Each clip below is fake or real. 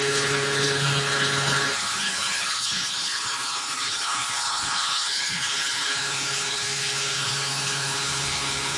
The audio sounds fake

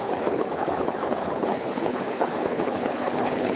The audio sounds fake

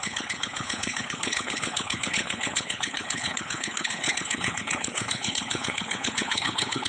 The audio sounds fake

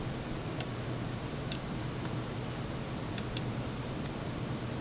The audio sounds real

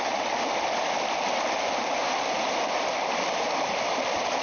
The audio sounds real